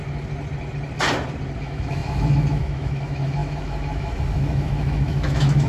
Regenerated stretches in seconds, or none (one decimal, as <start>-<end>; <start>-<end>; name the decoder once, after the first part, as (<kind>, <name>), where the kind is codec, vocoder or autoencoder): 1.6-5.7 (autoencoder, DAC-VAE)